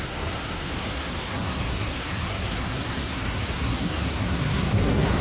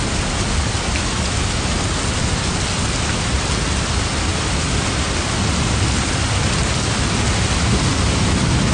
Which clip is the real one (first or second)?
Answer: second